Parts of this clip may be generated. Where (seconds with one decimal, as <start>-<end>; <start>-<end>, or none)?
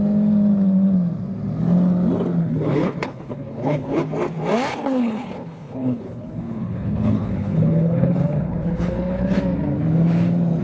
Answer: 2.4-4.0; 4.7-9.4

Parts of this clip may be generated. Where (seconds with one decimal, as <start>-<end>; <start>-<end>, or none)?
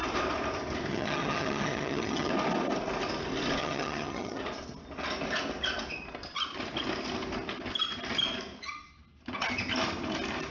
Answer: 0.9-2.3; 3.6-4.4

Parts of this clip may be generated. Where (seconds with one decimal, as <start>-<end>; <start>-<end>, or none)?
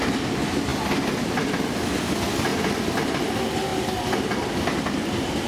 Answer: none